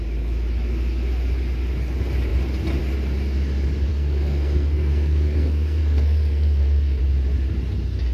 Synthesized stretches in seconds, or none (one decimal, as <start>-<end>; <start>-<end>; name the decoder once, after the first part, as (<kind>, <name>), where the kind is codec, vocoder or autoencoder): 3.9-7.0 (codec, SNAC)